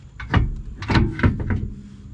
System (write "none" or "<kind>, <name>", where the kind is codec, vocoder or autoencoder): none